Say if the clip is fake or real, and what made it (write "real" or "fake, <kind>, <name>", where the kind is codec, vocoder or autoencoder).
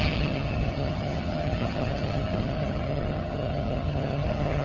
fake, vocoder, HiFi-GAN